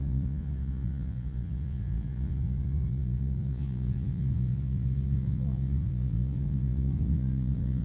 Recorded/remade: remade